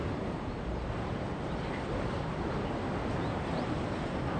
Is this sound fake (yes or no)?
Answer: no